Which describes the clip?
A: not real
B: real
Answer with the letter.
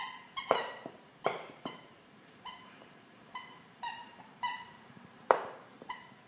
A